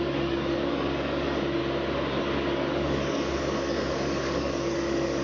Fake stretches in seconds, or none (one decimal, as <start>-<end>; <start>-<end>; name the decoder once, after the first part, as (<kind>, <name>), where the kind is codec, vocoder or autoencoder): 0.0-1.6 (codec, DAC); 2.2-5.2